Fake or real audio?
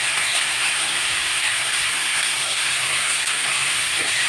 fake